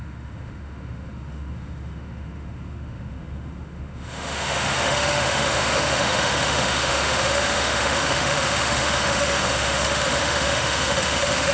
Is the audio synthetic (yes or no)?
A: yes